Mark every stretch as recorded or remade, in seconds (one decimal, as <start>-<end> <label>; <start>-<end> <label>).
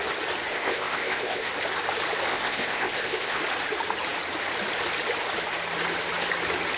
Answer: 0.0-0.5 recorded; 0.5-1.5 remade; 1.5-2.3 recorded; 2.3-3.4 remade; 3.4-6.8 recorded